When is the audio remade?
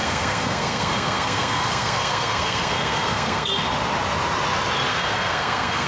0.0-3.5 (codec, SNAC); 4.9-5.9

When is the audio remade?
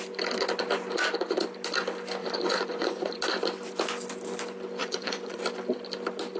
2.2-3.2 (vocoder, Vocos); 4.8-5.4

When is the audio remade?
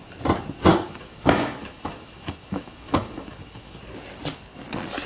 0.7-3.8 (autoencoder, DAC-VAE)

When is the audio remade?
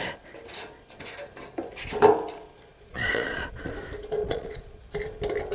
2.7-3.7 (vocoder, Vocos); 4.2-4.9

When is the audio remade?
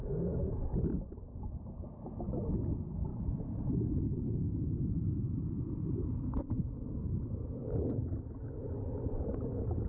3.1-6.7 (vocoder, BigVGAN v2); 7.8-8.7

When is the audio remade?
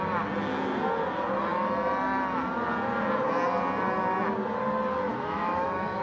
5.1-6.0 (autoencoder, DAC-VAE)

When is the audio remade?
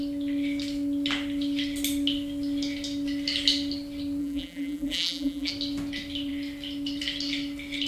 4.2-5.5 (vocoder, BigVGAN v2)